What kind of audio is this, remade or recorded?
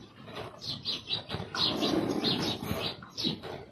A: remade